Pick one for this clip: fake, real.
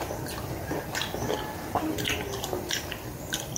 real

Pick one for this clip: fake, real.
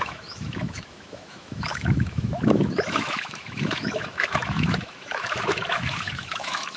fake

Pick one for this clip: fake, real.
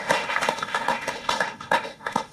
fake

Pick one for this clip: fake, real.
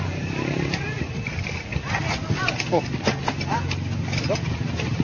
real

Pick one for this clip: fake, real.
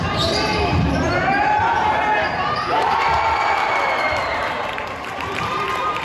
fake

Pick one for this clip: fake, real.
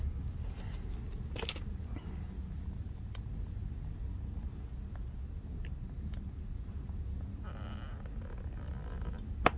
real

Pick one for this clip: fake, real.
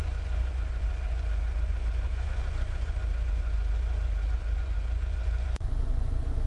fake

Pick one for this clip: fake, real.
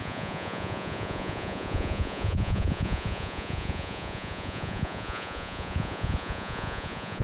fake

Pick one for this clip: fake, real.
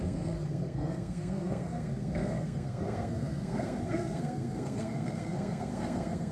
fake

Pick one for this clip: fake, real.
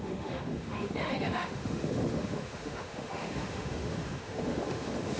fake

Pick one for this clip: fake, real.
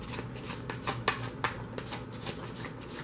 real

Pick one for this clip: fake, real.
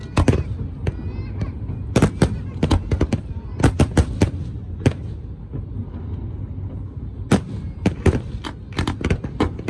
real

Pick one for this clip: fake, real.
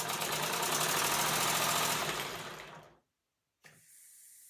real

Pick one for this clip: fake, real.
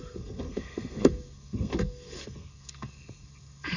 fake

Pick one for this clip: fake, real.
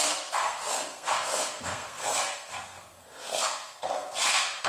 fake